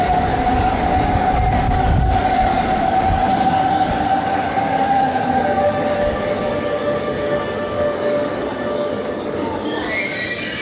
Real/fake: fake